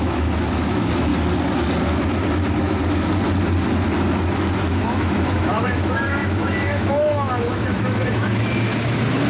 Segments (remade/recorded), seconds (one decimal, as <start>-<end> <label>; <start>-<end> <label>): 0.0-1.1 remade; 1.1-4.7 recorded; 4.7-9.3 remade